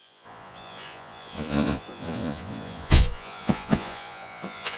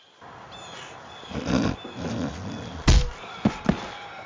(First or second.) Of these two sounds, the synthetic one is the first